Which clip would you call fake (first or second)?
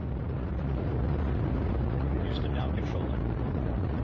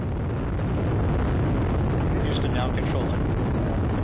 first